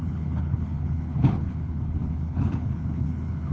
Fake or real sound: fake